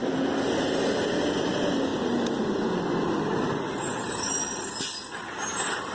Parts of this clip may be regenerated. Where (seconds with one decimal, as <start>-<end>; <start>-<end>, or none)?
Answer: 5.0-5.9